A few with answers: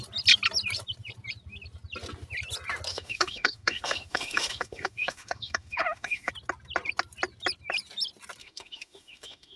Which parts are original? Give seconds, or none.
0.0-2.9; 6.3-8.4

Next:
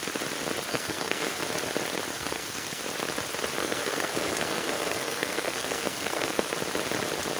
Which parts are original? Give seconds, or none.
0.0-0.7; 1.4-2.1; 2.8-3.6; 6.5-7.4

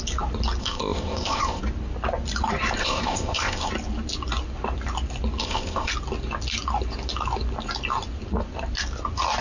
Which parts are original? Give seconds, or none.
0.0-0.6; 1.6-2.8; 3.7-5.4; 5.9-9.4

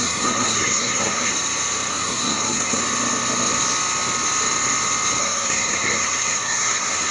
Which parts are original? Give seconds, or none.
1.3-1.9; 2.8-5.2

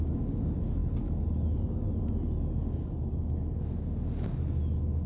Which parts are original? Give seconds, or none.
0.0-5.1

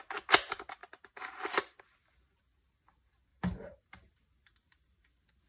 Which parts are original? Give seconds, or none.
0.0-0.8; 1.8-3.3; 5.1-5.5